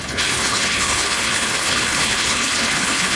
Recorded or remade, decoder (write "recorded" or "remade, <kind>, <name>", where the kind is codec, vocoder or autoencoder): remade, codec, HILCodec